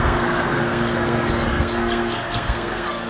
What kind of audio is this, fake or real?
fake